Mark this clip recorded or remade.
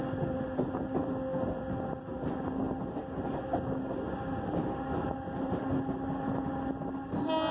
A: recorded